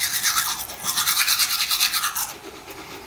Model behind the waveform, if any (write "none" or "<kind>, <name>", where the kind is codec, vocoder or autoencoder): none